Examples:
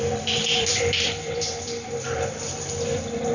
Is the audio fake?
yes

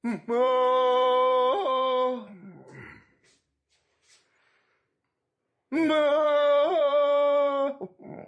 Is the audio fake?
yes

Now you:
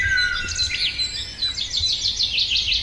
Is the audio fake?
no